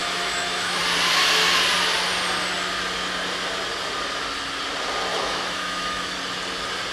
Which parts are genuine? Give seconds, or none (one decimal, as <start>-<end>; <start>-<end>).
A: 0.8-5.1; 6.1-6.9